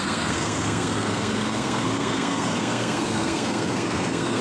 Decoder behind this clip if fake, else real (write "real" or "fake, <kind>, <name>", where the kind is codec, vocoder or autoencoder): fake, codec, SNAC